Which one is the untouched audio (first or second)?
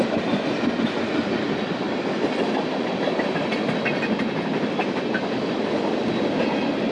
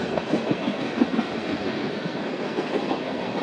first